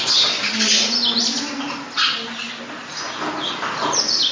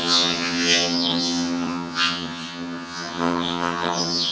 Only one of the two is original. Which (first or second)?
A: first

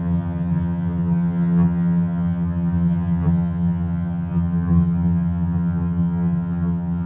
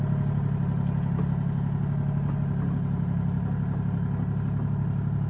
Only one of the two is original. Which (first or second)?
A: second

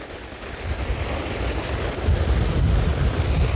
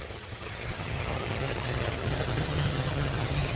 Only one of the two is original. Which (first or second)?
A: first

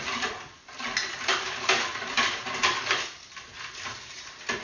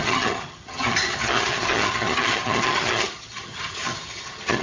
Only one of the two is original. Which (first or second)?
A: first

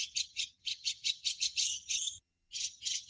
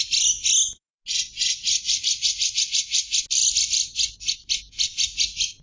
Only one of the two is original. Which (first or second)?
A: second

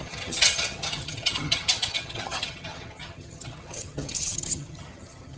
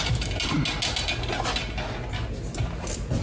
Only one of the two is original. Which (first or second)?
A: second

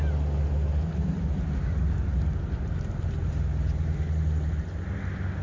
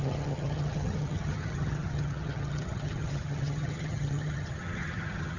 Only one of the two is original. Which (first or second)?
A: first